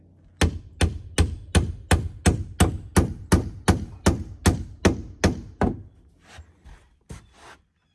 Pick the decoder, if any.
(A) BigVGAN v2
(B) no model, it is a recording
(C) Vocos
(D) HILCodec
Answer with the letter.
B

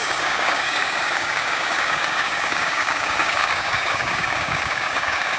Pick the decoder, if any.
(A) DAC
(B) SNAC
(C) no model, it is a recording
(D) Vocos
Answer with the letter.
A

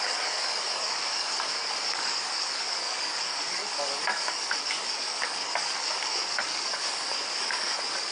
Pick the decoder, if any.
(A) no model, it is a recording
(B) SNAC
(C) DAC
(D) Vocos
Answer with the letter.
C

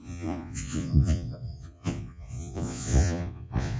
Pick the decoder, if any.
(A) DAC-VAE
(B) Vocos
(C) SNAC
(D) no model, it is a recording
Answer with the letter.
B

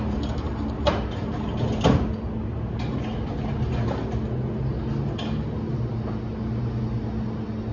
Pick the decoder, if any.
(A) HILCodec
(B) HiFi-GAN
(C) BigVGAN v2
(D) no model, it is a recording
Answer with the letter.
D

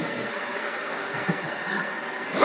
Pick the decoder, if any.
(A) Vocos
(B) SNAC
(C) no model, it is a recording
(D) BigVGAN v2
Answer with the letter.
B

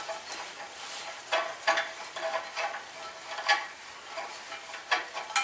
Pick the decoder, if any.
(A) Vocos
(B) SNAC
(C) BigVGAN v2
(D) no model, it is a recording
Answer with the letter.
D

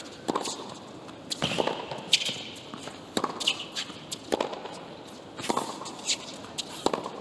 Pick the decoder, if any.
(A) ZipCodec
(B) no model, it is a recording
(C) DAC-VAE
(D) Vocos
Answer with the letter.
B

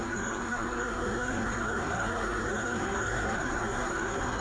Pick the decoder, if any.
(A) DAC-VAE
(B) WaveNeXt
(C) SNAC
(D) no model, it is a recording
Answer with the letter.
C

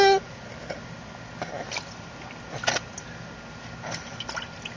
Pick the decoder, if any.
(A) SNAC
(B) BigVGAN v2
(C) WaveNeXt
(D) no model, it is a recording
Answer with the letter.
D